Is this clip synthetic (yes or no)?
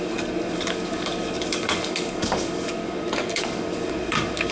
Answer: yes